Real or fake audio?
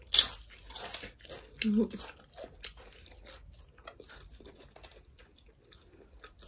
real